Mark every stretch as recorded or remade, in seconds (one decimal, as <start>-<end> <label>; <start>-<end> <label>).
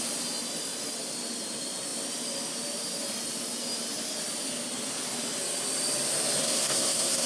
0.0-6.4 recorded; 6.4-7.3 remade